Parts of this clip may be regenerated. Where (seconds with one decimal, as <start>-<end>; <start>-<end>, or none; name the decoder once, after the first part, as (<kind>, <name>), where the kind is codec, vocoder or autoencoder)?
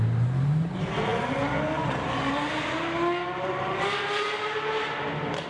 none